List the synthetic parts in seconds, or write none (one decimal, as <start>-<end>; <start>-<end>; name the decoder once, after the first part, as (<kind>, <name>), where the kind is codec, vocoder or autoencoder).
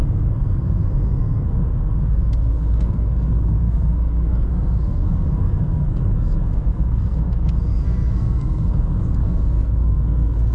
0.0-10.5 (codec, SNAC)